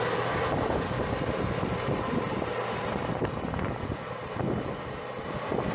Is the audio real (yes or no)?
yes